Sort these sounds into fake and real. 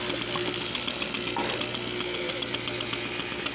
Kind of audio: real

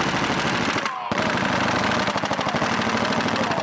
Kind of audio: real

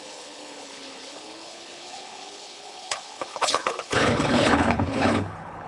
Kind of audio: fake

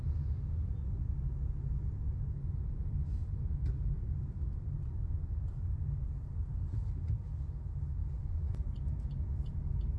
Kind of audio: real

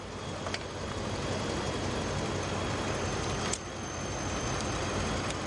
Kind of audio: real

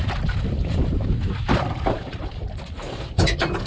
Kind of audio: fake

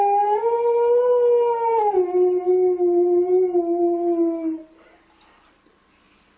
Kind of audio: real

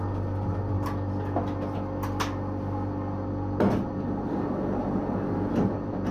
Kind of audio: real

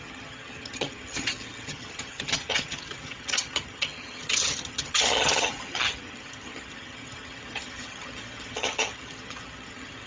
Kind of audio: fake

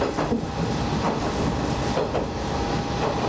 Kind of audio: real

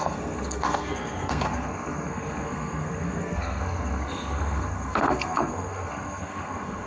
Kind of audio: fake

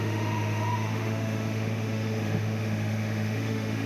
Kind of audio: fake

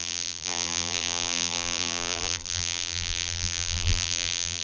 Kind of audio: fake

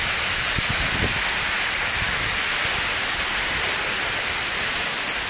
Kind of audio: real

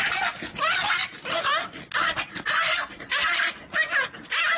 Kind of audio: real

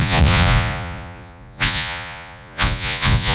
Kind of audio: fake